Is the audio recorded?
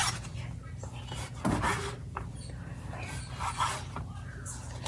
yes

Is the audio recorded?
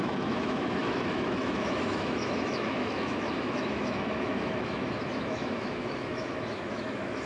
no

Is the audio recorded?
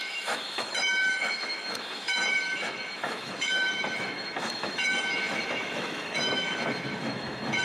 no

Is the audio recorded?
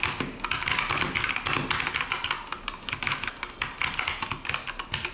yes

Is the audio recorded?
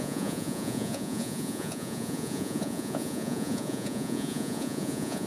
no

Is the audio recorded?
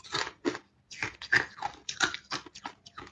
yes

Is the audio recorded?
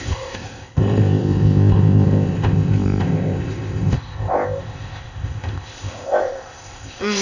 no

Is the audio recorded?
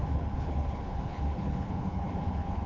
no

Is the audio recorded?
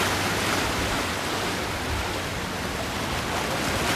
yes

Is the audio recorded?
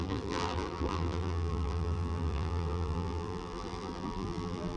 no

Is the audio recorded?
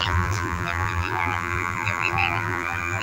no